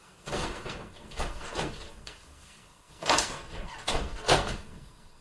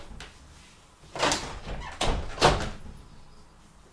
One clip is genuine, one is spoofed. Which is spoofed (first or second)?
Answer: first